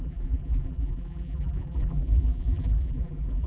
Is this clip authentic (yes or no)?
no